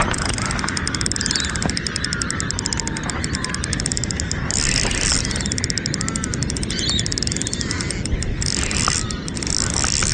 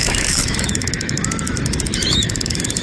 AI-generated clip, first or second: second